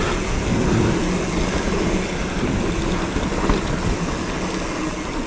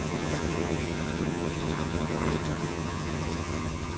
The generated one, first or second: second